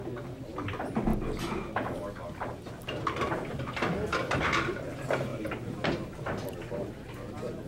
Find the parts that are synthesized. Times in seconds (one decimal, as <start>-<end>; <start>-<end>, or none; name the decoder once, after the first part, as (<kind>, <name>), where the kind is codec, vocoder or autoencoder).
none